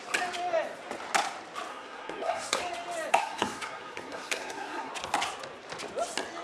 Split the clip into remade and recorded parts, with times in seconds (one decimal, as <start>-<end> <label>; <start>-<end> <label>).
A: 0.0-1.7 recorded; 1.7-2.6 remade; 2.6-3.1 recorded; 3.1-4.9 remade; 4.9-6.4 recorded